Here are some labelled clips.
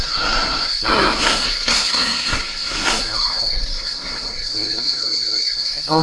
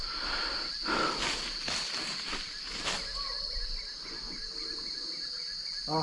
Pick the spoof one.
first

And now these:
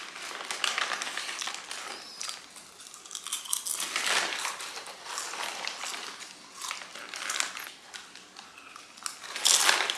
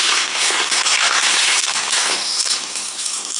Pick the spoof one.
second